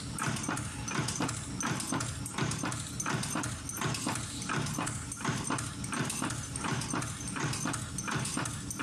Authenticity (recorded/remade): recorded